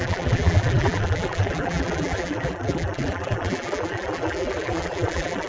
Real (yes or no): no